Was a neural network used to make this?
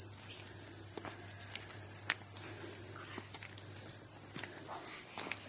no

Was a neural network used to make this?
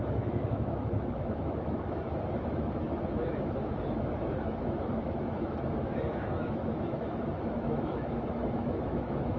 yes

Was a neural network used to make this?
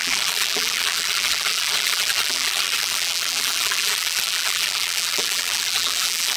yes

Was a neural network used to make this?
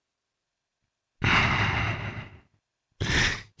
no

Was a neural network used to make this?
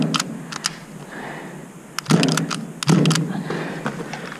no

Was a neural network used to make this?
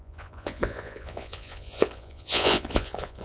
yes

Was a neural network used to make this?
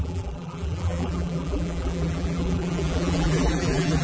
yes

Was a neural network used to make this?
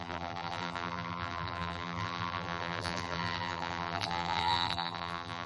yes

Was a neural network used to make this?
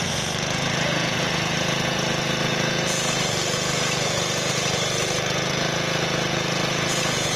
yes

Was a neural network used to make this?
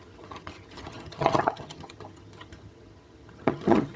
yes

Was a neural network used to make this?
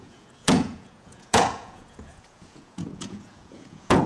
yes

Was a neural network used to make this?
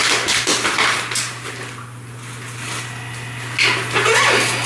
no